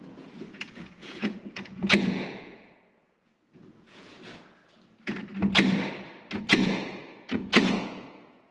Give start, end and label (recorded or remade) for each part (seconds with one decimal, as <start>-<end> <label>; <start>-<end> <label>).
0.0-4.6 remade; 4.6-6.4 recorded; 6.4-8.5 remade